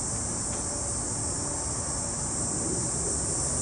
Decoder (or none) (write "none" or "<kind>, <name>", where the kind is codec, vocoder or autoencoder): none